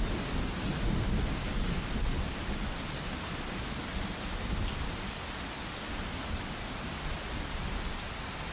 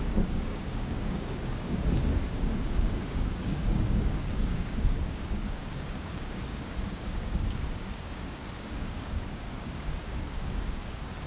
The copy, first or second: second